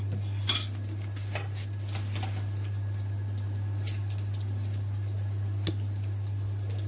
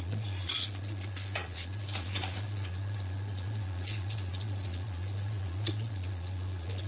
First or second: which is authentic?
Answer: first